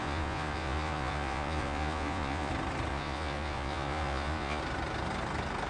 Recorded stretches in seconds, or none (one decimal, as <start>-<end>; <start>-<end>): 2.5-2.9; 4.6-5.7